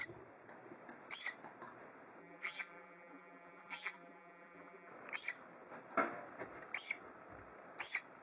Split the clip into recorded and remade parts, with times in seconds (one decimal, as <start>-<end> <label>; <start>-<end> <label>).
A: 0.0-2.2 recorded; 2.2-4.9 remade; 4.9-8.2 recorded